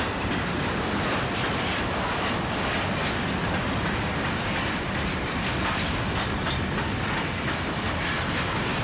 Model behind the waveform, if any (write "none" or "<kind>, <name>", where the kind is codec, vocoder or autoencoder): none